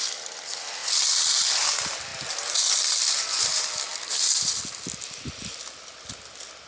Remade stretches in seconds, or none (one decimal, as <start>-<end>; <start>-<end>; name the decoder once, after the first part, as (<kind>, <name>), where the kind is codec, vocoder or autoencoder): none